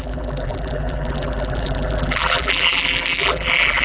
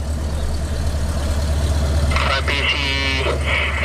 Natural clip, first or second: second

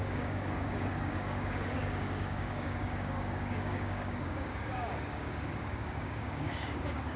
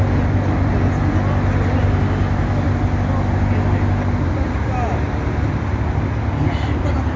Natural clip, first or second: second